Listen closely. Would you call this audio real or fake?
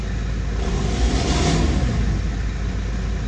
real